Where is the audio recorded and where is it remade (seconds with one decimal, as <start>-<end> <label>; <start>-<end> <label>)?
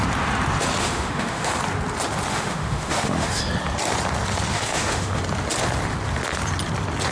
0.0-0.8 recorded; 0.8-1.6 remade; 1.6-2.3 recorded; 2.3-3.4 remade; 3.4-4.5 recorded; 4.5-5.2 remade; 5.2-7.1 recorded